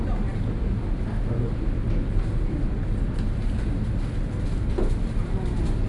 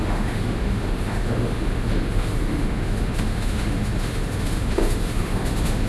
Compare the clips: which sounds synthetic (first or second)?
second